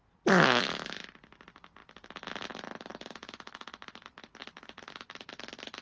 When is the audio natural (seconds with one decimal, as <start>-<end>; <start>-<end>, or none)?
0.0-5.8